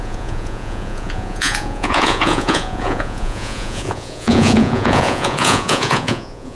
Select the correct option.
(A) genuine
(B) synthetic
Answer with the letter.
B